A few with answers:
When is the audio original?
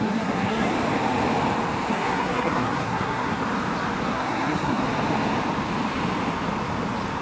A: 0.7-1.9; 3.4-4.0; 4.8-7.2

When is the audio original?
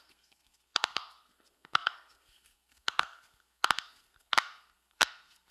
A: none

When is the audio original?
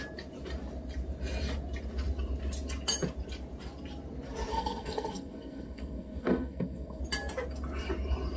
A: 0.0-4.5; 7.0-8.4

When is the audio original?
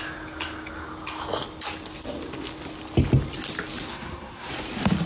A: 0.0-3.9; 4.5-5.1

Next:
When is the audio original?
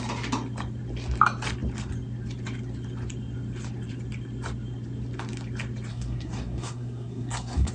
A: 0.0-5.9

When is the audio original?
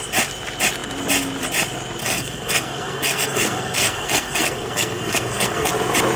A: 0.0-2.0; 5.7-6.2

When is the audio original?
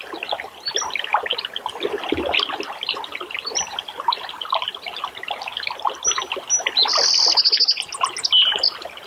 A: 0.0-9.1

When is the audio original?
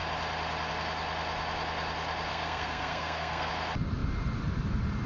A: 0.0-2.3; 3.5-5.1